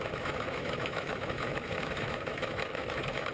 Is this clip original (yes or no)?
no